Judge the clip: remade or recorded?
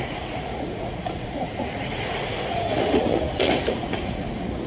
remade